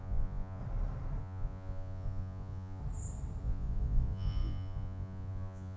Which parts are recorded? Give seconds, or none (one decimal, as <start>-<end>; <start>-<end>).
0.6-1.2; 2.8-3.4